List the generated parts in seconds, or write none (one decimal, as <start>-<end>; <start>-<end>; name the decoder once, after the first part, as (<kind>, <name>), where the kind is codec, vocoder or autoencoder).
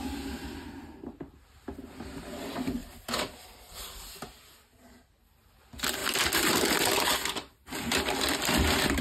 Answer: 2.8-4.2 (vocoder, BigVGAN v2); 6.0-6.5